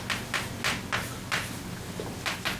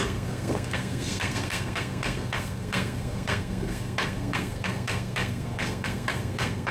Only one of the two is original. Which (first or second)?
first